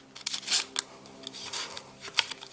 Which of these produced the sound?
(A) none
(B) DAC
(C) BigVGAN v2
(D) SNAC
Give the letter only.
A